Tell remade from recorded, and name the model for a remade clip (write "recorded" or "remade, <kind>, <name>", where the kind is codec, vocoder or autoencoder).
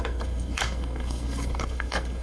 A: remade, codec, SNAC